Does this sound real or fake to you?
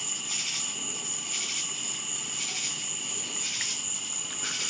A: real